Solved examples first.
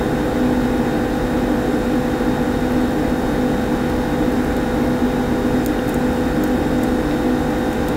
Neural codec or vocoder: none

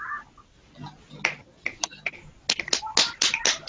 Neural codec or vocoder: none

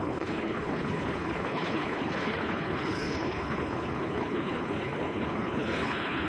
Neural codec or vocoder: codec, HILCodec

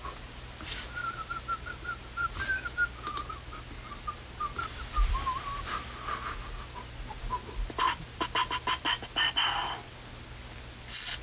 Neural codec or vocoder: none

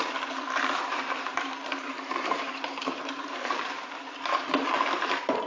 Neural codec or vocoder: vocoder, BigVGAN v2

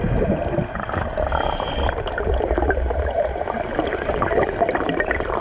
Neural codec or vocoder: none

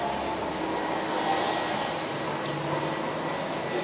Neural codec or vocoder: none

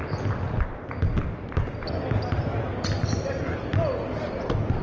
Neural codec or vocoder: none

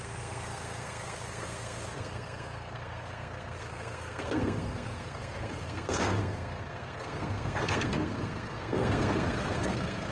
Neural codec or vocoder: codec, SNAC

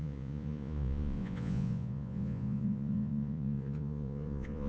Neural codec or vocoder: vocoder, Vocos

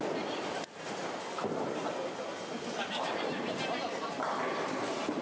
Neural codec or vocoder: vocoder, BigVGAN v2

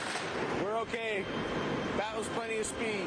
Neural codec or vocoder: none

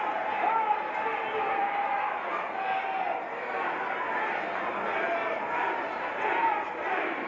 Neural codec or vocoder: none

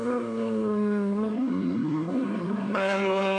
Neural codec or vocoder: codec, SNAC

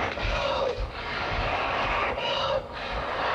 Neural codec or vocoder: codec, DAC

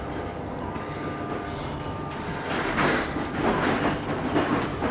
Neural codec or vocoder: none